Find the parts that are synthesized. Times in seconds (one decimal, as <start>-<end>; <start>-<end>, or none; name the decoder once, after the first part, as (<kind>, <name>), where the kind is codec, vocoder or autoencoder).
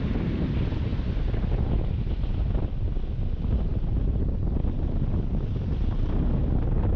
none